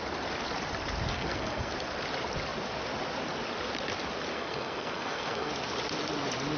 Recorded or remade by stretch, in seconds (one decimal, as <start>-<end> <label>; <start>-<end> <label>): 0.0-1.1 recorded; 1.1-1.7 remade; 1.7-4.3 recorded; 4.3-5.5 remade; 5.5-6.6 recorded